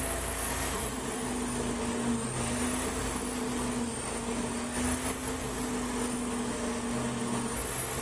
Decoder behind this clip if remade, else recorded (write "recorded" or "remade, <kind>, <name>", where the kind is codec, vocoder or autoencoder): recorded